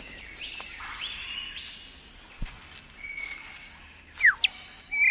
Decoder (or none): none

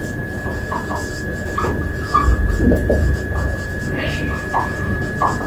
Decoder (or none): vocoder, Vocos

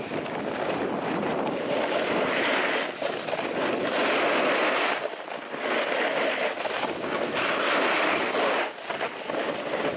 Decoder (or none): none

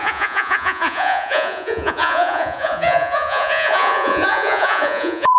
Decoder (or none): vocoder, Vocos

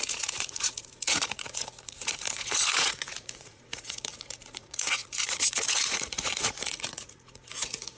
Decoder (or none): vocoder, Vocos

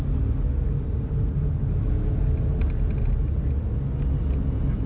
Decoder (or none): none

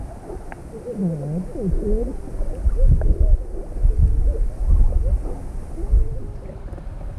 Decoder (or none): none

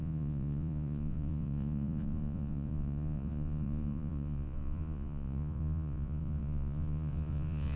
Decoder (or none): vocoder, Vocos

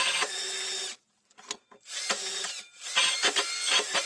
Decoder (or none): none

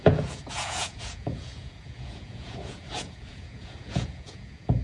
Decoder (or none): vocoder, Vocos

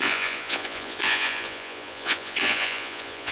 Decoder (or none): vocoder, Vocos